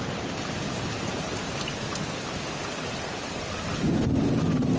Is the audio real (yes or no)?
yes